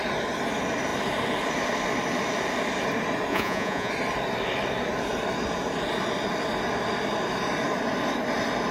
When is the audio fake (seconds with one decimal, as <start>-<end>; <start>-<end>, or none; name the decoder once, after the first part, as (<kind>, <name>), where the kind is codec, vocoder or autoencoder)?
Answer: 3.3-3.9 (vocoder, Vocos)